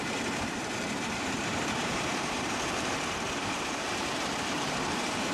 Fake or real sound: fake